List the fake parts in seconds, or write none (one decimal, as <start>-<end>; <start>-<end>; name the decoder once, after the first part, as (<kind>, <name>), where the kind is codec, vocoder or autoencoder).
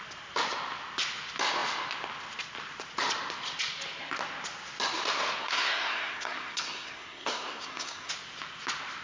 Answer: 5.4-8.1 (codec, SNAC)